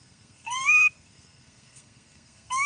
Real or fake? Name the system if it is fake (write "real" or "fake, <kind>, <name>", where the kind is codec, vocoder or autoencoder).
fake, codec, SNAC